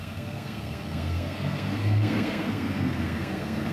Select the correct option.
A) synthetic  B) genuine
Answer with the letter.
A